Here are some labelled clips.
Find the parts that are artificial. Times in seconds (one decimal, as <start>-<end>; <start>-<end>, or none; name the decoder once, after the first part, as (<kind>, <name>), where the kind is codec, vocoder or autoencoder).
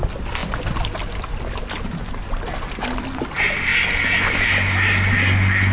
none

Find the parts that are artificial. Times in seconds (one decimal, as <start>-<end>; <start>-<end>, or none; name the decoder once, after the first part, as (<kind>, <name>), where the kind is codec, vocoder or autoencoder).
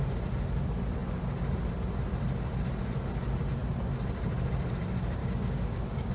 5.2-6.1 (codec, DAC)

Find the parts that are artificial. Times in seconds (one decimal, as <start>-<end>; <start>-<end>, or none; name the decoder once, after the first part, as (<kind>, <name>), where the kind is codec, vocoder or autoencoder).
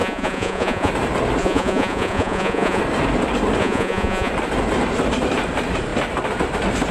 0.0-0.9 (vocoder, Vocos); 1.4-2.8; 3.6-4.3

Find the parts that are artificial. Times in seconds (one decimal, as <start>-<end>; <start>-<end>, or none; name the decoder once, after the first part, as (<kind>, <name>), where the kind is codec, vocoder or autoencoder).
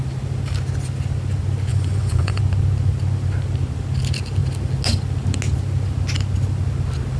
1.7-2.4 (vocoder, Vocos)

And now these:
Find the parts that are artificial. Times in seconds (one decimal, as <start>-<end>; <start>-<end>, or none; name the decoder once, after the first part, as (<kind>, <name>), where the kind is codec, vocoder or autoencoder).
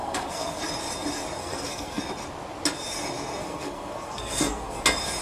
0.0-0.6 (codec, SNAC); 1.4-2.0; 3.4-4.8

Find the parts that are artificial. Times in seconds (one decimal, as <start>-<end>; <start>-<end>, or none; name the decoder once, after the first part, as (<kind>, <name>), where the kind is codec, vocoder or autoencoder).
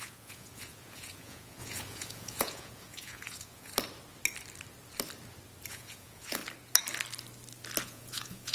0.0-3.7 (vocoder, Vocos); 5.7-6.4; 7.8-8.5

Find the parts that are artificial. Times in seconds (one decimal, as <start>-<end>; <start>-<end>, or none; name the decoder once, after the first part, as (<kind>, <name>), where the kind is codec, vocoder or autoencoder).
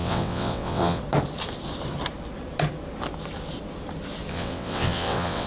0.0-1.0 (vocoder, WaveNeXt); 4.3-5.5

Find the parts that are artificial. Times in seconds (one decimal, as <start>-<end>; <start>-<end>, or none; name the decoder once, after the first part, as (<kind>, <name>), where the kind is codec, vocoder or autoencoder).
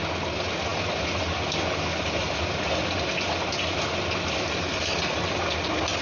none